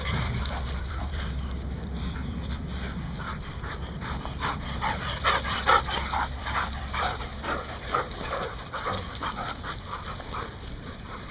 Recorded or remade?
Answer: remade